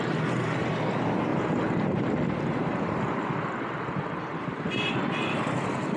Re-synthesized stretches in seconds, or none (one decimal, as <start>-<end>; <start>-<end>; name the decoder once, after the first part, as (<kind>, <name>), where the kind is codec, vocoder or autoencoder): none